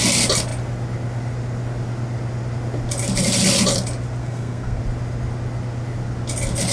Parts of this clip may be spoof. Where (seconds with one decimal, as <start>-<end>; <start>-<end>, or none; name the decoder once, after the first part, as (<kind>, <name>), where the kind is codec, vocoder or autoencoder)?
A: 4.2-4.8 (codec, SNAC)